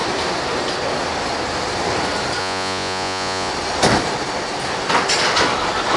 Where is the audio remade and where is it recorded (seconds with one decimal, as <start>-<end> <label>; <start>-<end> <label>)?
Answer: 0.0-2.4 recorded; 2.4-3.5 remade; 3.5-6.0 recorded